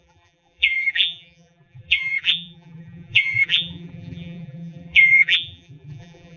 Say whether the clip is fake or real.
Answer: fake